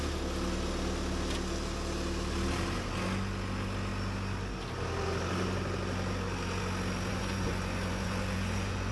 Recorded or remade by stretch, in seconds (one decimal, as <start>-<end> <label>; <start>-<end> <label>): 0.0-7.1 recorded; 7.1-8.9 remade